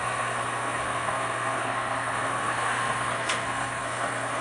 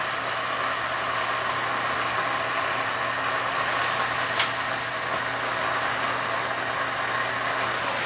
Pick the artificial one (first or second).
first